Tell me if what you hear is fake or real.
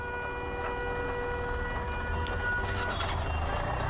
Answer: real